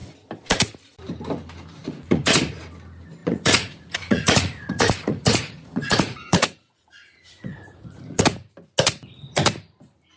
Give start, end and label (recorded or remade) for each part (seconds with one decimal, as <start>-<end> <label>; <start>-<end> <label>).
0.0-1.8 recorded; 1.8-2.4 remade; 2.4-3.2 recorded; 3.2-8.2 remade; 8.2-10.2 recorded